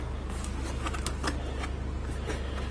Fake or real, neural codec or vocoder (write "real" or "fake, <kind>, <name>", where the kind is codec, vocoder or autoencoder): real